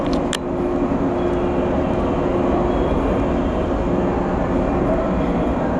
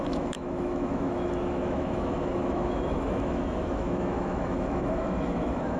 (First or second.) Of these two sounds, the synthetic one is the second